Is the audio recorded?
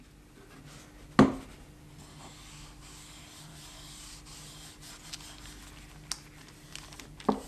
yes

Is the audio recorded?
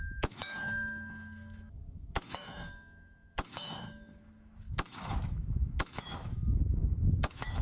no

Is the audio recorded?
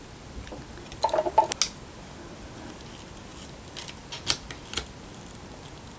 yes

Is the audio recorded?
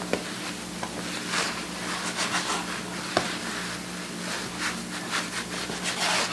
yes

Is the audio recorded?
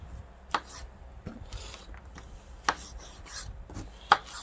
yes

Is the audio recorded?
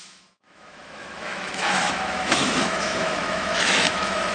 no